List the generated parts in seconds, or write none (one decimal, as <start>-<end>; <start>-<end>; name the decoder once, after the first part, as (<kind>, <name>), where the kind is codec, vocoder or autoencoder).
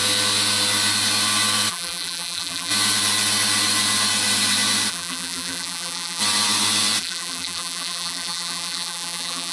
1.7-2.7 (vocoder, BigVGAN v2); 4.9-6.2; 7.0-9.5